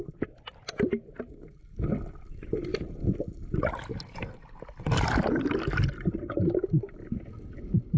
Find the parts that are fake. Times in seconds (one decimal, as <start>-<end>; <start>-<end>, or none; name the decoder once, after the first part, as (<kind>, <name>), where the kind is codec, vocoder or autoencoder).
none